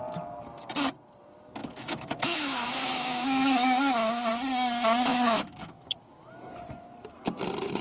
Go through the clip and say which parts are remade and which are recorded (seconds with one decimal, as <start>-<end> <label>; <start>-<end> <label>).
0.0-1.6 recorded; 1.6-4.3 remade; 4.3-5.1 recorded; 5.1-6.5 remade; 6.5-7.8 recorded